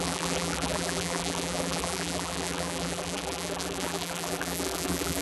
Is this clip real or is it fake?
fake